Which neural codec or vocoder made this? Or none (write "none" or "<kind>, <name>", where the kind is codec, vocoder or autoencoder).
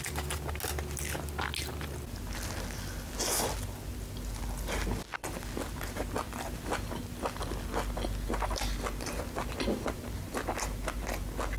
none